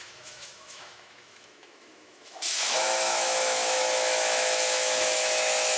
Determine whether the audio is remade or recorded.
remade